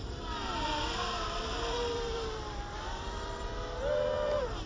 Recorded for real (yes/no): no